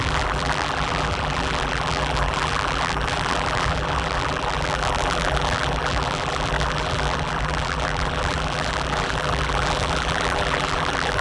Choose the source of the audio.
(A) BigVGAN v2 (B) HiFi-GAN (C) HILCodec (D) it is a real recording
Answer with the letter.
A